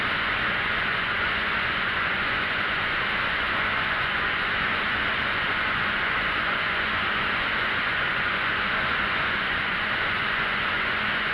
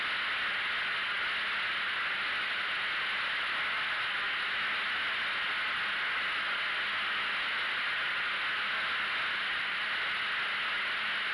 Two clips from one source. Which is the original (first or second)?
second